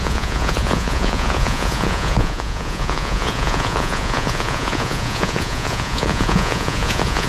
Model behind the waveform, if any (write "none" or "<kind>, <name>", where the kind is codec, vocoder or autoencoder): vocoder, Vocos